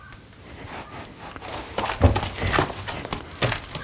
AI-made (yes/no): no